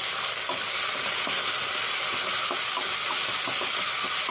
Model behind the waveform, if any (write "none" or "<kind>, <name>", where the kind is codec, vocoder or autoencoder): none